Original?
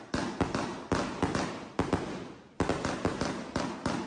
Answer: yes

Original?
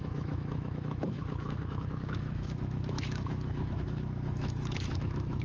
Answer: no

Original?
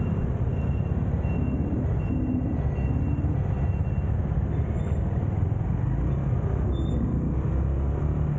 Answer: yes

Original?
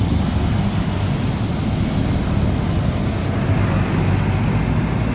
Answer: yes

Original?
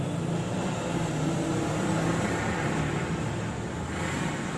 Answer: yes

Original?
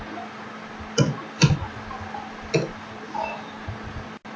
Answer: yes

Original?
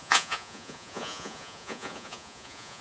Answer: no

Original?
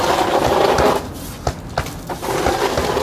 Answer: yes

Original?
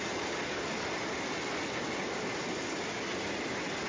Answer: yes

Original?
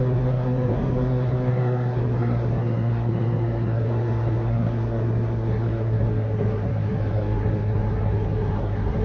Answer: no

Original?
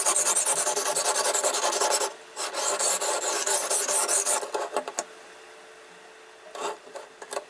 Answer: yes